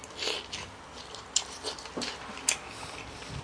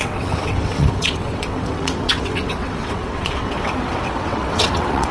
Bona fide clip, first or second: first